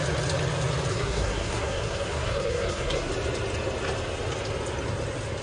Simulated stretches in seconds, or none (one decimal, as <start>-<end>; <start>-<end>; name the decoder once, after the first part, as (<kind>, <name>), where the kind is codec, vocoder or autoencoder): 0.9-3.1 (codec, SNAC)